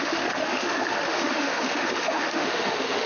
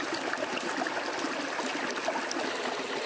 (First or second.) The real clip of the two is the second